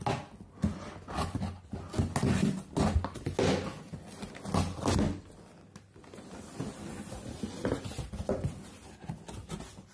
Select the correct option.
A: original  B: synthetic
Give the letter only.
A